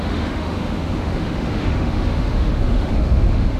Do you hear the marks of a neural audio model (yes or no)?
yes